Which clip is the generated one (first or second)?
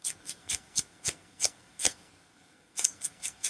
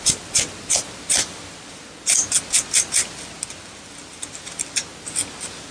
first